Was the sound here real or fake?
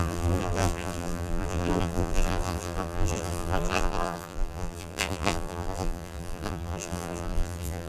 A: fake